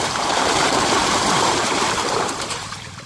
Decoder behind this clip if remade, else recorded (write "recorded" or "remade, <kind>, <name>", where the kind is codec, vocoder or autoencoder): remade, vocoder, BigVGAN v2